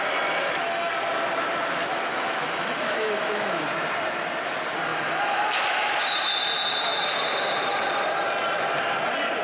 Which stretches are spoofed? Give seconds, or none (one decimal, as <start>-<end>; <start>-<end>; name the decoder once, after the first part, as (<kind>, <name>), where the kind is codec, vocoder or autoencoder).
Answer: 0.4-0.9 (autoencoder, DAC-VAE); 1.9-3.6; 4.9-5.9